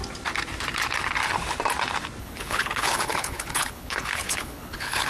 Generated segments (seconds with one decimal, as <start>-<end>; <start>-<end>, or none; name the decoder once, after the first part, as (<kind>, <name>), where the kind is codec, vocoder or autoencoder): 2.2-5.1 (codec, HILCodec)

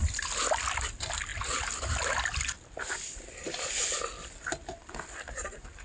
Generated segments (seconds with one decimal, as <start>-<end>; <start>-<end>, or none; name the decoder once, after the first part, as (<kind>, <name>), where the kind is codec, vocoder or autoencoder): none

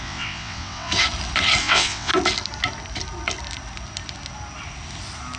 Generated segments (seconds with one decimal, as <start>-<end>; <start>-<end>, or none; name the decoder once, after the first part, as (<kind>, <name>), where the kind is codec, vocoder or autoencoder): 0.0-0.9 (vocoder, WaveNeXt); 1.6-2.1

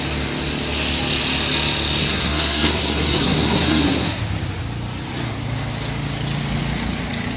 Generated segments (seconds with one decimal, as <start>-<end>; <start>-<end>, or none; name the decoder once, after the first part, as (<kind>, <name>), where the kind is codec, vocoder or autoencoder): 2.0-4.2 (codec, SNAC)

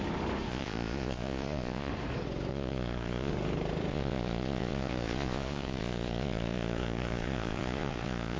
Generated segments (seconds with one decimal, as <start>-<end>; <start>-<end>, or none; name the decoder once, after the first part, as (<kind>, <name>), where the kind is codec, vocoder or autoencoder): 0.5-1.9 (vocoder, Vocos); 2.5-3.3; 3.9-8.4